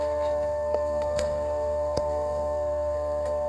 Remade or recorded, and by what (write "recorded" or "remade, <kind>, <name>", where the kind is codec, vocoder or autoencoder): remade, codec, SNAC